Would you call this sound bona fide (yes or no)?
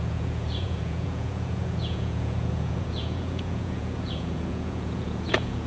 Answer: no